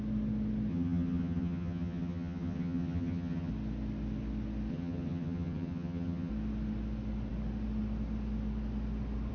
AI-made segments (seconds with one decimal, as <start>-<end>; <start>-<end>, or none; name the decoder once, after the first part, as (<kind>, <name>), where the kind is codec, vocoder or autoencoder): 0.7-3.5 (vocoder, HiFi-GAN); 4.7-6.3